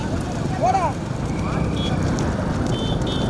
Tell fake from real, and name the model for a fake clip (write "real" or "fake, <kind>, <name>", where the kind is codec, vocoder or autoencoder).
real